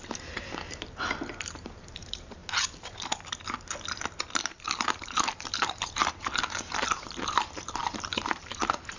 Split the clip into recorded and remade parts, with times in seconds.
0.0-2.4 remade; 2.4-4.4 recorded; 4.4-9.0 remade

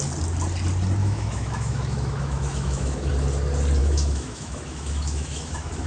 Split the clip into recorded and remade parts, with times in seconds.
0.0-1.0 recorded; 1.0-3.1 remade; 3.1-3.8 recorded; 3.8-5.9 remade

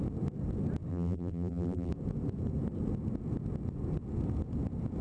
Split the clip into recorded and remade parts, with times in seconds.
0.0-0.9 recorded; 0.9-1.9 remade; 1.9-5.0 recorded

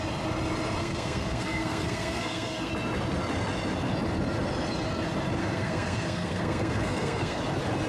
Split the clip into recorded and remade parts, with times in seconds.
0.0-0.8 recorded; 0.8-2.7 remade; 2.7-5.4 recorded; 5.4-7.4 remade; 7.4-7.9 recorded

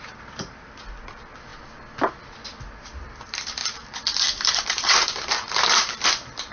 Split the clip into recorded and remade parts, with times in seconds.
0.0-1.5 remade; 1.5-2.1 recorded; 2.1-6.5 remade